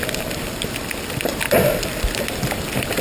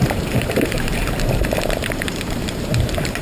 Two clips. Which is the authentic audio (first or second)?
first